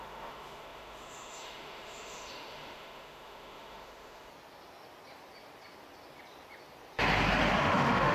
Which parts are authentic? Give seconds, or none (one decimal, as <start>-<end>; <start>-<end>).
4.3-7.6